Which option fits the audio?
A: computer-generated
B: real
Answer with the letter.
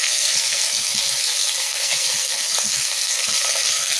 A